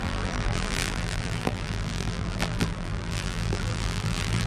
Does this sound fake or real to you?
fake